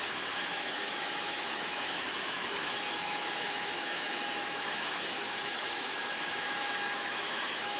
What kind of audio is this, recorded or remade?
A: remade